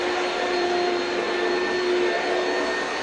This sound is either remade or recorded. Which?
recorded